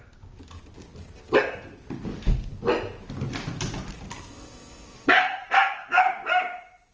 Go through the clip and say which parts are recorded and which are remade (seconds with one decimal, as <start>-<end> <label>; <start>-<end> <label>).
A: 0.0-5.2 recorded; 5.2-6.0 remade; 6.0-6.9 recorded